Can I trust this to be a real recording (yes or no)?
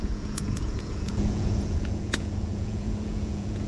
no